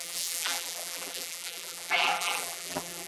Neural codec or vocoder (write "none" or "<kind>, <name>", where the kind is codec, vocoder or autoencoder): vocoder, BigVGAN v2